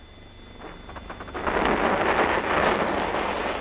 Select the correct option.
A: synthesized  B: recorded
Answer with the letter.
B